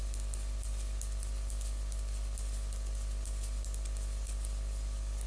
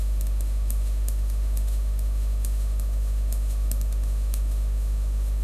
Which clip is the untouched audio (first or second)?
first